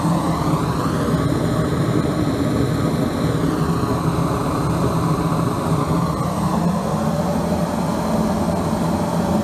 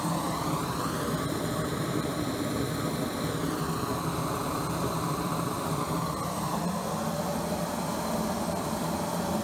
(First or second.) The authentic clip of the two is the first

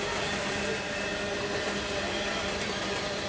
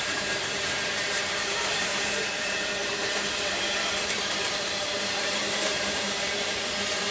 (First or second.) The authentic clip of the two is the first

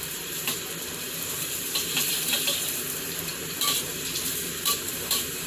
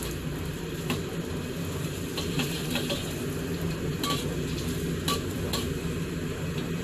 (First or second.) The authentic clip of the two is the second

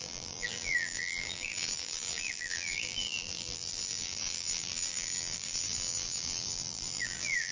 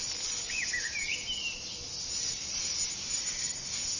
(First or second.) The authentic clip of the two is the second